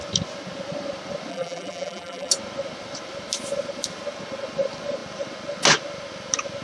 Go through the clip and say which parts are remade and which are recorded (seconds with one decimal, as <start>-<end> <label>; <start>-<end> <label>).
0.0-1.3 recorded; 1.3-2.3 remade; 2.3-6.6 recorded